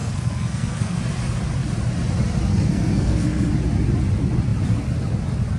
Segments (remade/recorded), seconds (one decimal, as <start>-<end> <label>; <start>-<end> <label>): 0.0-1.0 remade; 1.0-2.5 recorded; 2.5-3.5 remade; 3.5-5.6 recorded